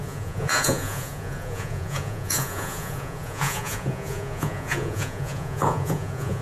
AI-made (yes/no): yes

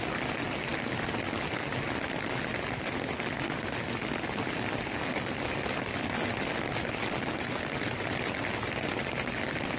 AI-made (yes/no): no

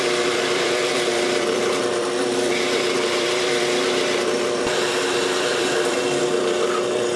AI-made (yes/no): yes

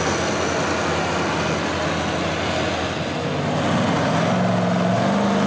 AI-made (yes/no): no